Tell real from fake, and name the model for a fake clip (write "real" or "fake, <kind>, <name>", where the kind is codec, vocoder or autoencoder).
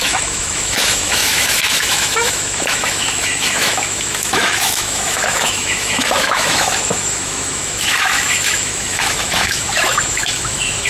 fake, autoencoder, DAC-VAE